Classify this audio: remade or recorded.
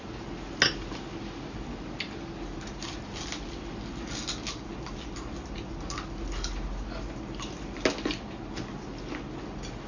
recorded